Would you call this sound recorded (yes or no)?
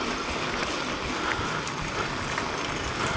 yes